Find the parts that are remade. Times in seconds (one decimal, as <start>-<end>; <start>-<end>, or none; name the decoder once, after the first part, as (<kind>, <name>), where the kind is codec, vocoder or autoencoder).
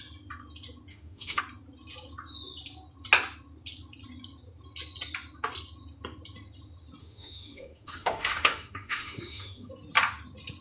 0.9-1.4 (autoencoder, DAC-VAE); 7.0-9.7